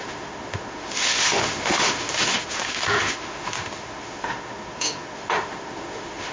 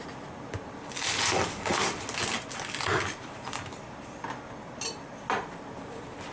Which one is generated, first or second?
first